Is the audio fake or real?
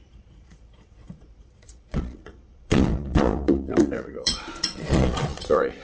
fake